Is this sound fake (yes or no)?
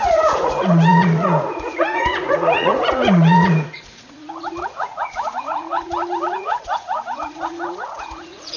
yes